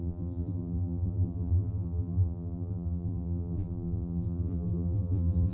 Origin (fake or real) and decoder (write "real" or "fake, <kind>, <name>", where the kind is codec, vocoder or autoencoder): fake, vocoder, BigVGAN v2